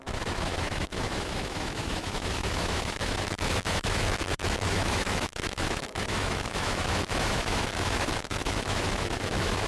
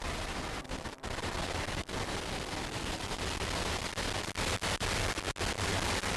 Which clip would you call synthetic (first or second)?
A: first